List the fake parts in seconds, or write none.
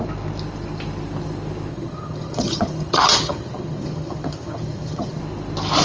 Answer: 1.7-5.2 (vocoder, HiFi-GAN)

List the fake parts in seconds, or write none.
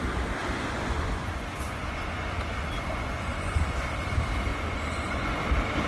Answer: 0.4-3.9 (vocoder, Vocos); 4.5-5.4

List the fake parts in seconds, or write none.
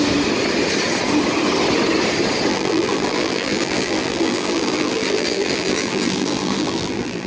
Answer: 2.5-7.3 (vocoder, BigVGAN v2)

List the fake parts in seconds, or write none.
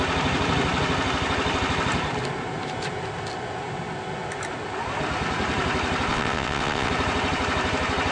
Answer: 6.1-6.9 (vocoder, WaveNeXt)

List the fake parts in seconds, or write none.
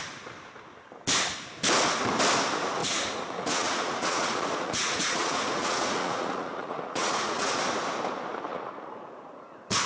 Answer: 2.8-7.6 (vocoder, Vocos); 8.5-9.4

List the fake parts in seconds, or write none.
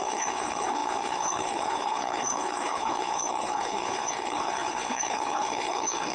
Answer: 0.0-6.1 (codec, HILCodec)